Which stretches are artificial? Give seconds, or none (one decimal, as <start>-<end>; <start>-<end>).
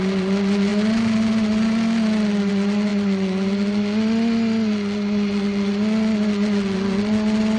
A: none